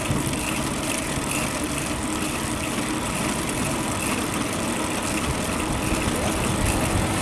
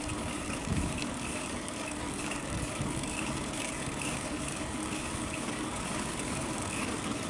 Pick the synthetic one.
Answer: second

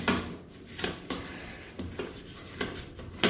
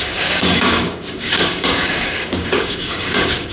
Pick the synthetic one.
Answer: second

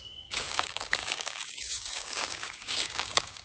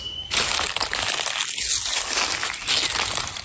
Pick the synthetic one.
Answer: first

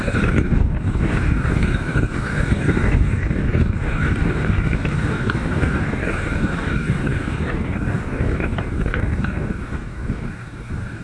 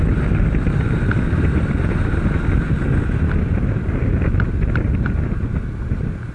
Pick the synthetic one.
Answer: first